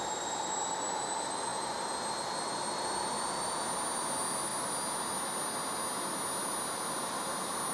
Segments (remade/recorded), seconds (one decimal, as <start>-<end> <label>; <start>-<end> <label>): 0.0-7.7 recorded